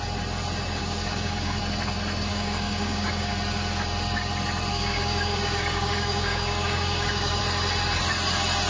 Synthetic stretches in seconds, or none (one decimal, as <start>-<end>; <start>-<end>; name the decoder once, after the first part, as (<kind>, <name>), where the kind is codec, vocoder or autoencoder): 0.8-1.6 (codec, DAC); 2.3-3.3; 4.7-7.4